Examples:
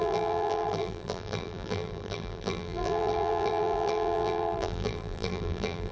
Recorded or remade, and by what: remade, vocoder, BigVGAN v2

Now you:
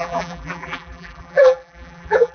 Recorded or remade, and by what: remade, vocoder, BigVGAN v2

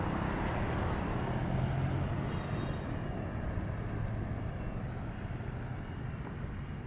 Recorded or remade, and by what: recorded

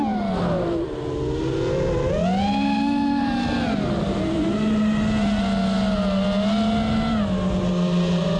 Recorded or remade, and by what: recorded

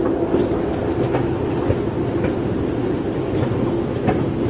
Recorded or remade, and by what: recorded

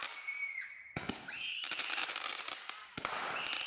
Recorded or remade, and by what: remade, vocoder, BigVGAN v2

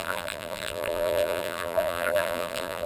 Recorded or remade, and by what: remade, vocoder, BigVGAN v2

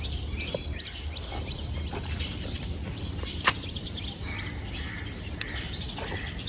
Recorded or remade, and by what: remade, vocoder, BigVGAN v2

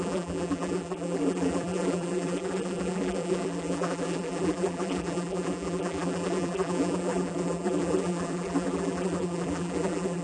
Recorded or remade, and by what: remade, vocoder, BigVGAN v2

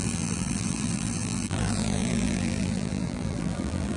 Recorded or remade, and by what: remade, vocoder, BigVGAN v2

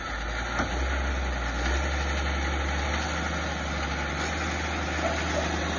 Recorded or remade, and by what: recorded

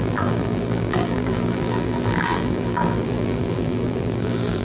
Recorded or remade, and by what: remade, vocoder, BigVGAN v2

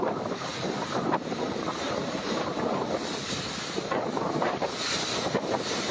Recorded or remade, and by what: remade, vocoder, BigVGAN v2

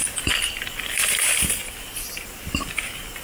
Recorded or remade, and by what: recorded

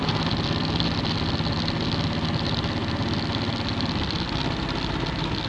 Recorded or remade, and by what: recorded